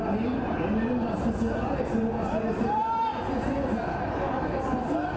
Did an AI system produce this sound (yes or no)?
no